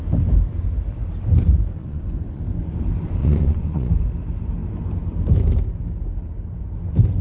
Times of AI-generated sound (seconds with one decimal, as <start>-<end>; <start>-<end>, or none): 1.8-2.4; 3.2-3.9